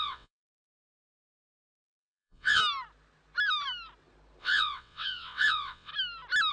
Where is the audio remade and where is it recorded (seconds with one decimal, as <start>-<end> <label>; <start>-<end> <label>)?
0.0-2.6 remade; 2.6-4.4 recorded; 4.4-5.9 remade; 5.9-6.5 recorded

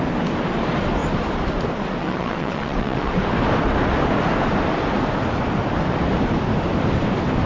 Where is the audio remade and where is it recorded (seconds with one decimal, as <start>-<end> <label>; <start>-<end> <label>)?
0.0-2.0 recorded; 2.0-3.1 remade; 3.1-7.5 recorded